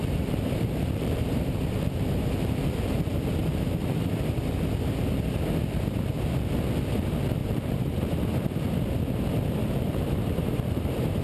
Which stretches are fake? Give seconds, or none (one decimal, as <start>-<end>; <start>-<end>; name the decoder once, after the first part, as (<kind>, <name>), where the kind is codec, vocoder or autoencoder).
0.0-2.6 (vocoder, BigVGAN v2); 3.4-4.5; 7.4-8.0; 9.6-11.2